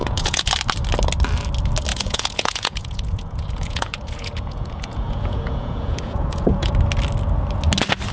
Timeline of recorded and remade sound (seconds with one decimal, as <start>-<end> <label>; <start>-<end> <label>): 0.0-0.5 remade; 0.5-1.9 recorded; 1.9-6.7 remade; 6.7-8.1 recorded